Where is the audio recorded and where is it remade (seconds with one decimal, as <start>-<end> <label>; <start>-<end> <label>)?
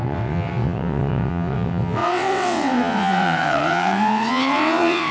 0.0-5.1 remade